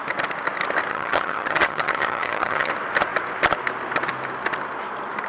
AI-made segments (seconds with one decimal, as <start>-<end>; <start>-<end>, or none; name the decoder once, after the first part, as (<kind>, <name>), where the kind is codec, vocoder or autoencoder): 0.9-2.7 (vocoder, HiFi-GAN)